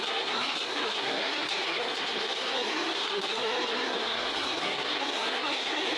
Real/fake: fake